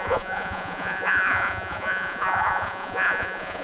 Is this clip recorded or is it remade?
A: remade